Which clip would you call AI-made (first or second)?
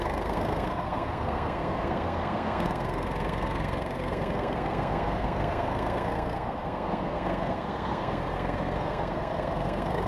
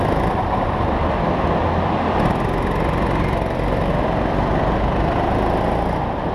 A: first